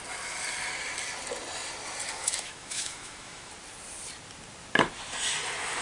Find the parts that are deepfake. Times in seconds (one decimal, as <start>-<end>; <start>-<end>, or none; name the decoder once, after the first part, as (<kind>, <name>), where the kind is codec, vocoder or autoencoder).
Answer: 2.2-3.5 (autoencoder, DAC-VAE)